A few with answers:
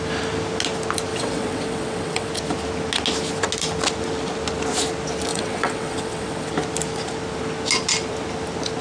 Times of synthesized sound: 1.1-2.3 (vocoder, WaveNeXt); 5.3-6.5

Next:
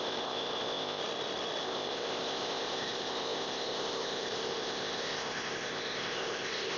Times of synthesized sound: 0.0-1.0 (codec, ZipCodec); 1.6-6.8

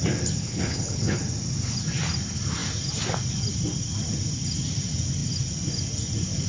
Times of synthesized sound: 0.4-1.2 (codec, HILCodec)

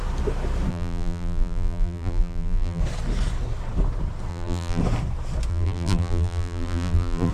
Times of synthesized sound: 0.7-2.8 (vocoder, BigVGAN v2); 4.3-4.8; 5.5-7.3

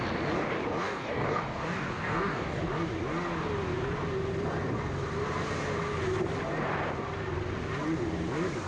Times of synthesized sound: 0.8-2.6 (codec, DAC)

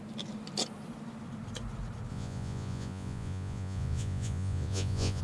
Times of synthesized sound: 2.1-5.2 (vocoder, Vocos)

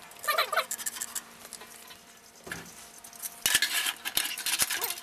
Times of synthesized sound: none

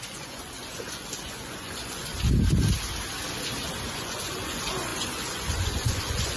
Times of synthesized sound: 0.0-2.1 (vocoder, Vocos); 3.8-6.4